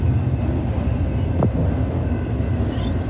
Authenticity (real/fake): real